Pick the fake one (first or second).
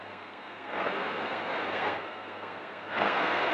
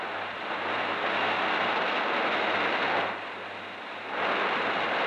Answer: first